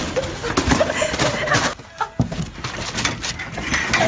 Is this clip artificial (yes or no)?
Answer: no